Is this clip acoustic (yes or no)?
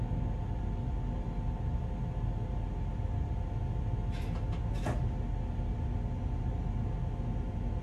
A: yes